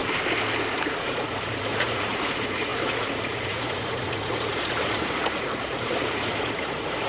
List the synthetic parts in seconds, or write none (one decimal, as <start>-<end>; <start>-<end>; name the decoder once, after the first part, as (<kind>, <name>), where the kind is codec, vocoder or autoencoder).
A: 0.7-7.1 (vocoder, Vocos)